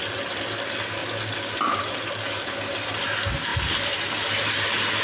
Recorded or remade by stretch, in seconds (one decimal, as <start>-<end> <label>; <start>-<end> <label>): 0.0-5.0 recorded